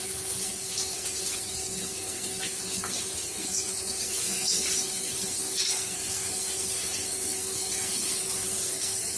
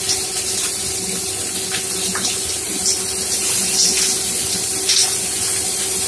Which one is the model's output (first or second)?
first